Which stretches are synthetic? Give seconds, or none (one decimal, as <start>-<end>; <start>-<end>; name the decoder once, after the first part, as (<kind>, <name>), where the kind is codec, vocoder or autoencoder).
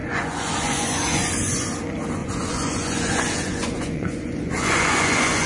0.0-1.7 (vocoder, Vocos); 2.2-5.5